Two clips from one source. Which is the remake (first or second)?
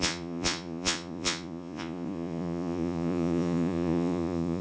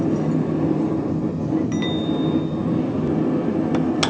first